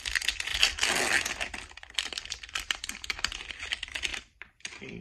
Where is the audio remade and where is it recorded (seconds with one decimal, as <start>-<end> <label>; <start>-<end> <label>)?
0.0-4.1 recorded; 4.1-5.0 remade